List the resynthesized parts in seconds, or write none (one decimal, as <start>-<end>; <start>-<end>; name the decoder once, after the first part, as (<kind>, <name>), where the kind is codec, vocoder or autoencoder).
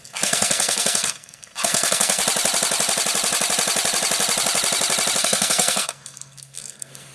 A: 0.0-2.2 (codec, SNAC); 5.2-7.1